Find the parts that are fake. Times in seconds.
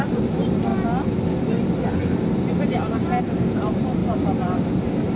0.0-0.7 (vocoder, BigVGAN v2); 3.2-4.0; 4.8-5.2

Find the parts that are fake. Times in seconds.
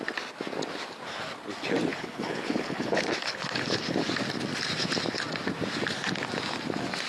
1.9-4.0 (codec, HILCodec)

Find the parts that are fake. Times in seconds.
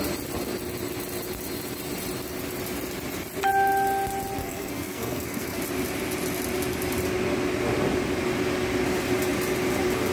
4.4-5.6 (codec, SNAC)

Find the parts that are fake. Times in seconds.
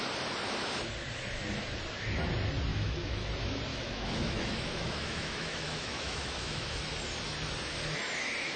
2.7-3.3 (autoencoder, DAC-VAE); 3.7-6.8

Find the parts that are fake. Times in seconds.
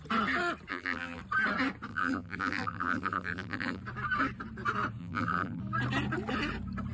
0.7-1.2 (vocoder, BigVGAN v2); 1.9-3.8; 5.0-5.6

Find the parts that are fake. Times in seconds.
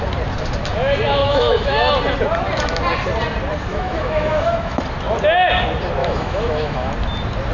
1.2-1.9 (autoencoder, DAC-VAE); 3.7-4.8; 6.0-6.9